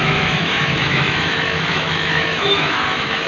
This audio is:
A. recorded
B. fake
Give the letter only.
B